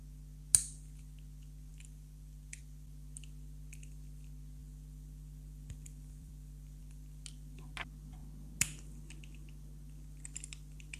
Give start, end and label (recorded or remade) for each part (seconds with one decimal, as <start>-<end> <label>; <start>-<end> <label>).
0.0-4.6 recorded; 4.6-6.8 remade; 6.8-11.0 recorded